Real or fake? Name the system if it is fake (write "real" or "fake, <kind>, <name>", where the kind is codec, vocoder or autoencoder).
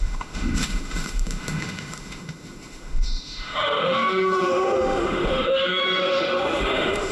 fake, autoencoder, DAC-VAE